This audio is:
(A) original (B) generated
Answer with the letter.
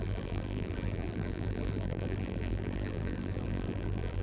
B